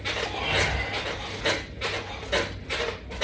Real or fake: real